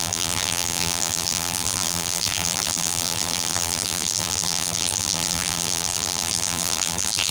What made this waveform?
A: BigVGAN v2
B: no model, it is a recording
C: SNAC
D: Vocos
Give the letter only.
A